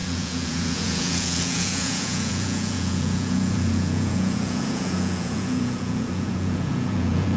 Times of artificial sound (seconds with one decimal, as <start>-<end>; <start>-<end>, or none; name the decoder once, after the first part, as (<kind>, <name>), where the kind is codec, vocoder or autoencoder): 0.0-7.4 (vocoder, Vocos)